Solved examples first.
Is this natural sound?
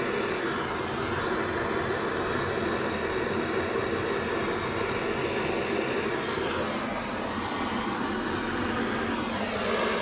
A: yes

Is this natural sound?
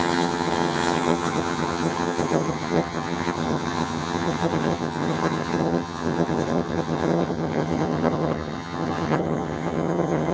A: no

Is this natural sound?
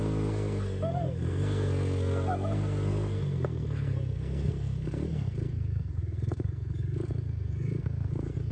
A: no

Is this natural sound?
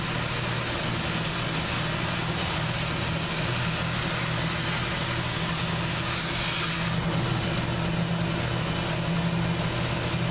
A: yes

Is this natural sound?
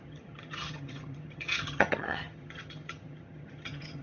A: no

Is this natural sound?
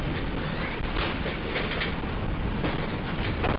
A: yes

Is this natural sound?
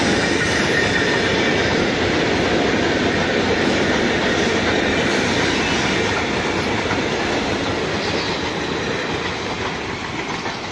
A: yes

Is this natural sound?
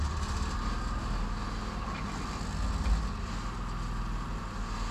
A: yes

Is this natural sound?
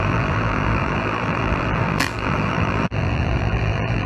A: no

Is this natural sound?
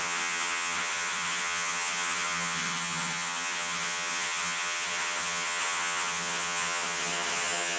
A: no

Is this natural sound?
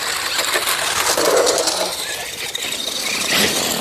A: yes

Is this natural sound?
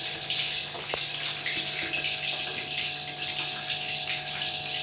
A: yes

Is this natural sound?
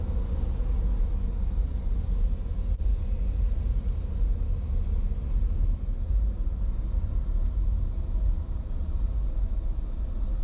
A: yes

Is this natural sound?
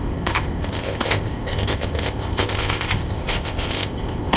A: no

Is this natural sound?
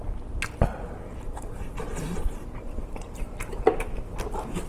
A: no